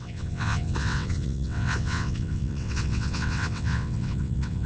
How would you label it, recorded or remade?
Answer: remade